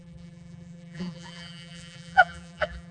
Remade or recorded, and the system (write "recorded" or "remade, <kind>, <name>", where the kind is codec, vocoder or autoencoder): remade, vocoder, BigVGAN v2